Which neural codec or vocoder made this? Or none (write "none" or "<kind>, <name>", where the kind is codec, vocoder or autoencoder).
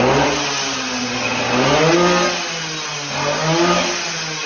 none